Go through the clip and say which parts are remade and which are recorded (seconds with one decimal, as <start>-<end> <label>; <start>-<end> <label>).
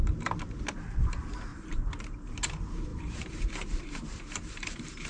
0.0-1.5 recorded; 1.5-2.3 remade; 2.3-2.9 recorded; 2.9-5.1 remade